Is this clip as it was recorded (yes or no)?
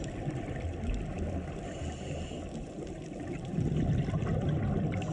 yes